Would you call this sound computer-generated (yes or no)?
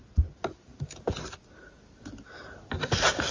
no